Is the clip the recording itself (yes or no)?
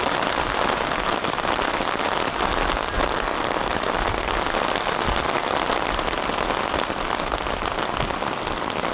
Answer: yes